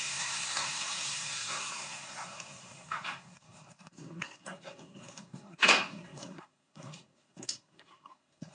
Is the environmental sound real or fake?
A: fake